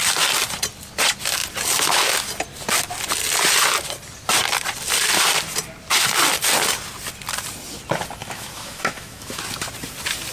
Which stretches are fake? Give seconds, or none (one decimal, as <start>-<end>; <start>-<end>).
8.2-9.4